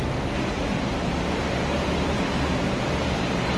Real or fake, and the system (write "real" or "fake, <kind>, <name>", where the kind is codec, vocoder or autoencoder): real